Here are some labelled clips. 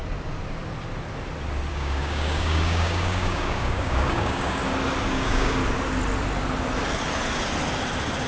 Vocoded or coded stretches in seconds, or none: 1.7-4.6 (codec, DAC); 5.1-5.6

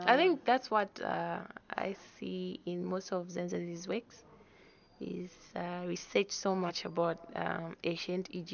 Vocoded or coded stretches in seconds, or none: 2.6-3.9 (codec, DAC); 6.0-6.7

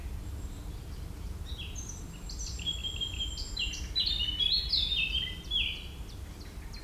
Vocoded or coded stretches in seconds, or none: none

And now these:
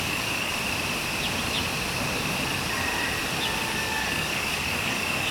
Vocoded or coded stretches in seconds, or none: 0.0-0.5 (codec, DAC); 3.7-5.3

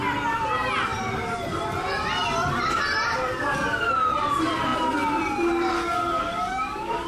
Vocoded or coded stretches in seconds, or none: 5.7-7.1 (codec, DAC)

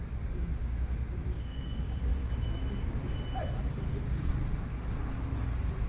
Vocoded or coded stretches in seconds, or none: 0.0-2.1 (codec, DAC)

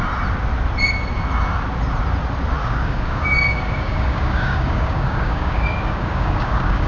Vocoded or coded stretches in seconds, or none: 2.6-6.9 (codec, DAC)